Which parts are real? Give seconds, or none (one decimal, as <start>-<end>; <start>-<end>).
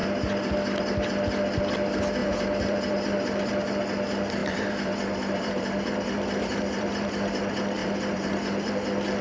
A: 0.0-2.2; 3.5-4.4; 7.1-7.8; 8.7-9.2